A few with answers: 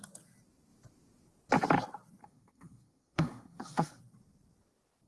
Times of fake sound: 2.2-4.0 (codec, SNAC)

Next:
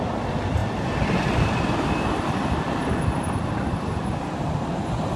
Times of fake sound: none